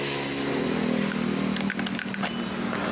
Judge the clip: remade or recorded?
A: recorded